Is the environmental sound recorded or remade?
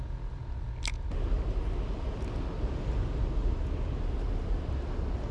recorded